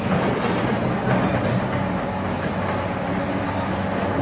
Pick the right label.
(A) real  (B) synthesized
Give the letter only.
A